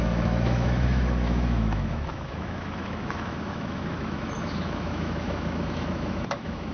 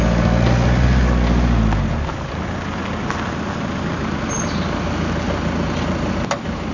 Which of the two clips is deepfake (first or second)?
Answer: first